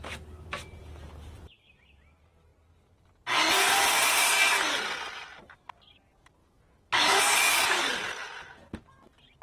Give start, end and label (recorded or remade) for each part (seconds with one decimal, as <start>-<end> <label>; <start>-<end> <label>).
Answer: 0.0-6.4 recorded; 6.4-7.2 remade; 7.2-9.4 recorded